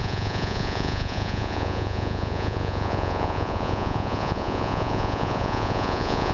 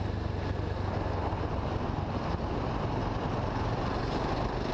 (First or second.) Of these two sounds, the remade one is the first